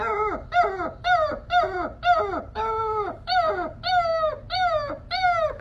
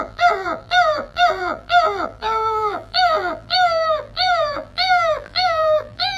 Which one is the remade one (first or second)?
second